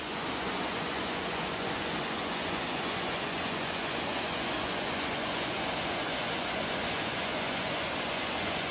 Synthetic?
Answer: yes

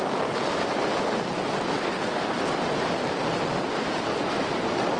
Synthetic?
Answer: no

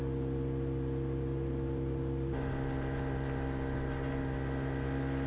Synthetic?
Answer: no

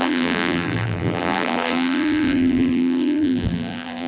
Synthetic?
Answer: yes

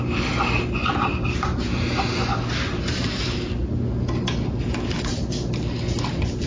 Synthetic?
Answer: no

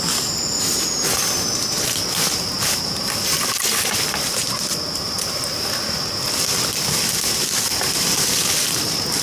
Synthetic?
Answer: no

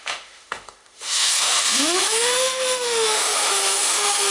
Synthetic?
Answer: yes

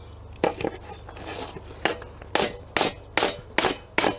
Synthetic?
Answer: no